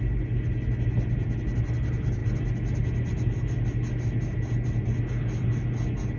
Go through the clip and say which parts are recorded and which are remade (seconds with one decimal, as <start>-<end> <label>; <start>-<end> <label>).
0.0-6.2 recorded